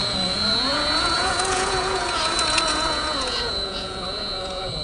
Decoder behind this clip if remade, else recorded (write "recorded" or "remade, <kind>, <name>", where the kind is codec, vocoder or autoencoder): remade, vocoder, Vocos